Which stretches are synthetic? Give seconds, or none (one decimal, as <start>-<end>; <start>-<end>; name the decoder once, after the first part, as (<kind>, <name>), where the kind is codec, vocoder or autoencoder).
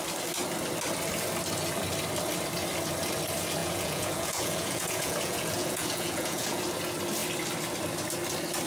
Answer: 3.6-6.6 (vocoder, Vocos)